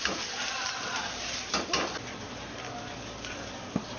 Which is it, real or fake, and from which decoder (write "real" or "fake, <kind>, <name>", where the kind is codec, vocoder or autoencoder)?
real